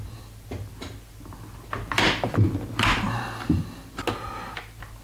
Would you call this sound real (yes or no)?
yes